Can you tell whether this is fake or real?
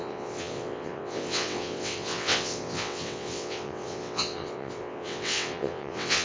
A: fake